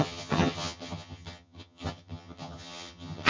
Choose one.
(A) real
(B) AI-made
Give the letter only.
B